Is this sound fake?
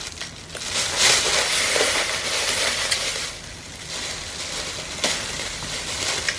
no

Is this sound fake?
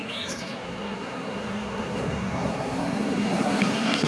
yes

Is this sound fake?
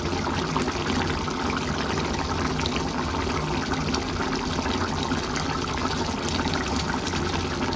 no